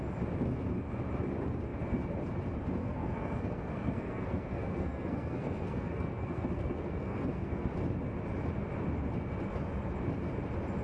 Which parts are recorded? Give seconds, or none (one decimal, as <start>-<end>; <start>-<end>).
0.0-2.8; 7.7-10.8